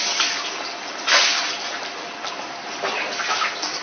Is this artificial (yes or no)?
no